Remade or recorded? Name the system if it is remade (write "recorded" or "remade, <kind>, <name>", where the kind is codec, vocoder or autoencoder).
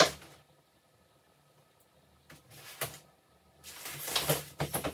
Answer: recorded